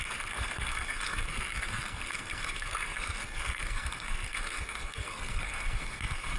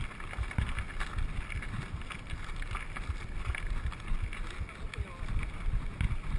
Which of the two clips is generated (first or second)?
first